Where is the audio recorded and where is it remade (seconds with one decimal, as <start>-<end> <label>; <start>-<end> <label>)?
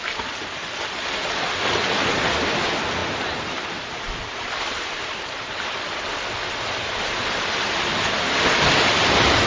0.0-3.0 recorded; 3.0-5.6 remade; 5.6-9.5 recorded